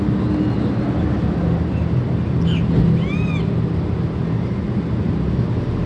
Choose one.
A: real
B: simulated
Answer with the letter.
A